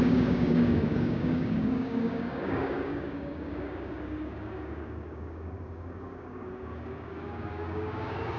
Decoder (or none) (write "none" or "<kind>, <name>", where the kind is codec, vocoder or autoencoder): codec, DAC